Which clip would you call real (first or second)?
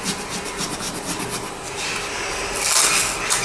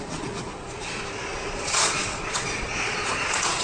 first